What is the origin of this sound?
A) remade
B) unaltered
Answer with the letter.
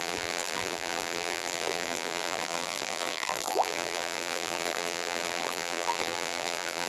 A